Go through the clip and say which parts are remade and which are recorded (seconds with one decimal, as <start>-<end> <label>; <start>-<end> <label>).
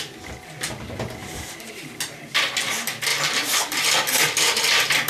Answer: 0.0-1.2 recorded; 1.2-2.0 remade; 2.0-3.1 recorded; 3.1-3.8 remade; 3.8-5.1 recorded